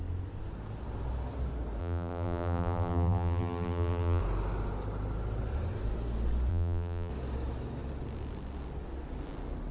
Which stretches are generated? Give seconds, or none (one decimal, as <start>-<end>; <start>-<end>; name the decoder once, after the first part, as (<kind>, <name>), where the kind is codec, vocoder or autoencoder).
1.8-4.2 (vocoder, BigVGAN v2); 6.5-7.1